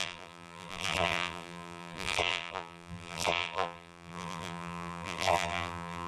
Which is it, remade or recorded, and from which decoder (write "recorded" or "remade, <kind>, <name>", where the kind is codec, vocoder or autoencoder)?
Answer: remade, vocoder, BigVGAN v2